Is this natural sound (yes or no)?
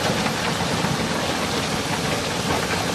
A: yes